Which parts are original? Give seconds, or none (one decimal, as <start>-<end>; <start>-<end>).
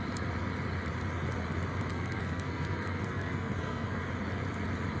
0.0-1.9; 4.1-5.0